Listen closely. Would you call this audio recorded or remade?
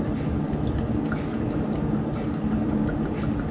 recorded